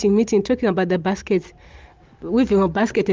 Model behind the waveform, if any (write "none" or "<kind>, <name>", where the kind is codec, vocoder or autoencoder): none